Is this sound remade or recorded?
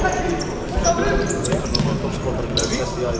recorded